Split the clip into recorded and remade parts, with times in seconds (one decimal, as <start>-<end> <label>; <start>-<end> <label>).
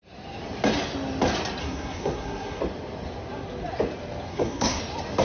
0.0-1.6 recorded; 1.6-2.6 remade; 2.6-4.3 recorded; 4.3-4.8 remade; 4.8-5.2 recorded